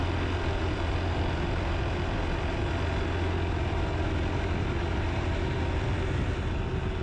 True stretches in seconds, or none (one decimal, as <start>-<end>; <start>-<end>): 0.6-7.0